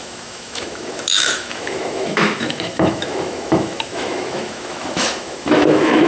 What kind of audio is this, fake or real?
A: fake